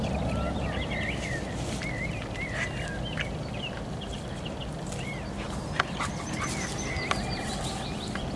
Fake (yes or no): no